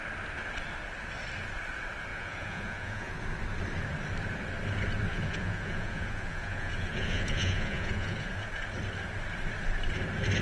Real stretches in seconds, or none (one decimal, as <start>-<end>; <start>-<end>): 0.0-2.1; 3.2-5.1; 8.5-10.4

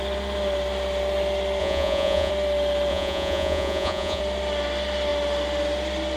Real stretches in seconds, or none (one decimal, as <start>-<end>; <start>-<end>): 0.0-1.6; 2.3-2.9; 4.2-6.2

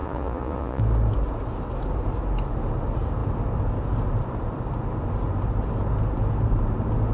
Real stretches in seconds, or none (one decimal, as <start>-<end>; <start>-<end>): 0.8-7.1